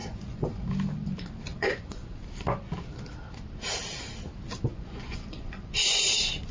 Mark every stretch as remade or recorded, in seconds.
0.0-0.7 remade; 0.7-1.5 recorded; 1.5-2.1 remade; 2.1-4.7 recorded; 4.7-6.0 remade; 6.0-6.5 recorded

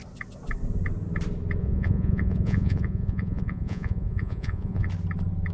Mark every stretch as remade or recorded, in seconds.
0.0-1.6 recorded; 1.6-4.9 remade; 4.9-5.5 recorded

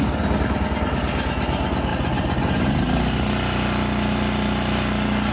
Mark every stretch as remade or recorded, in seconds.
0.0-5.3 recorded

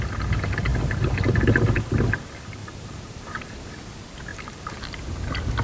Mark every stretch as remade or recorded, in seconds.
0.0-0.7 recorded; 0.7-1.4 remade; 1.4-2.6 recorded; 2.6-3.8 remade; 3.8-4.3 recorded; 4.3-5.0 remade; 5.0-5.6 recorded

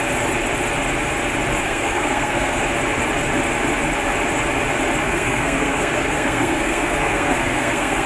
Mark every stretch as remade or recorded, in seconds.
0.0-1.6 recorded; 1.6-2.6 remade; 2.6-5.0 recorded; 5.0-8.1 remade

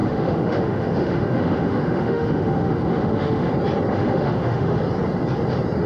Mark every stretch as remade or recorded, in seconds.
0.0-3.5 remade; 3.5-3.9 recorded; 3.9-4.8 remade; 4.8-5.9 recorded